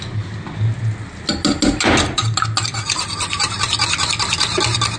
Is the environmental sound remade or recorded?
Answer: recorded